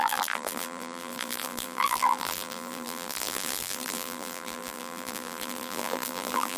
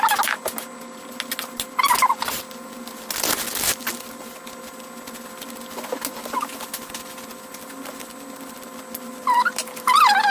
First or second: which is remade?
first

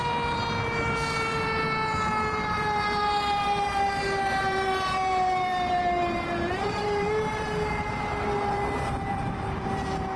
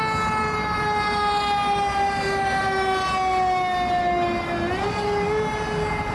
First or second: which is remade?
first